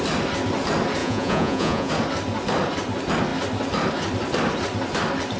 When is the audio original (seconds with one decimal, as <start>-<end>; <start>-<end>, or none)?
0.0-1.0; 1.9-5.4